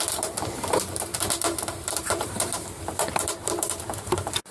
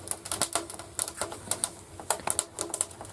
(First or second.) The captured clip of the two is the second